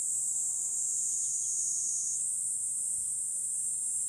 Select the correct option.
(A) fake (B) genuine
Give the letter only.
B